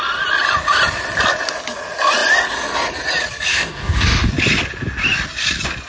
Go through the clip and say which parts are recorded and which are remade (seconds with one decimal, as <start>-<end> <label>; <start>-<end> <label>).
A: 0.0-3.5 recorded; 3.5-4.3 remade; 4.3-5.9 recorded